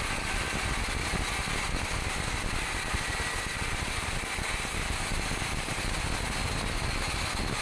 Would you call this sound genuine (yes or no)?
yes